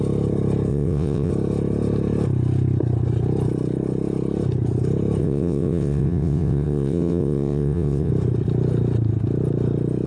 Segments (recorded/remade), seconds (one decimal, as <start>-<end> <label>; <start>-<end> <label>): 0.0-0.7 recorded; 0.7-1.3 remade; 1.3-5.2 recorded; 5.2-8.1 remade; 8.1-10.1 recorded